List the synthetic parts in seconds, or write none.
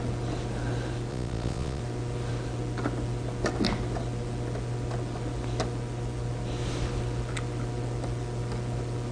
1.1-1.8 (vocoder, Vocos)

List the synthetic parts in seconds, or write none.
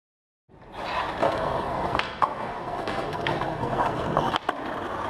1.2-4.3 (codec, SNAC)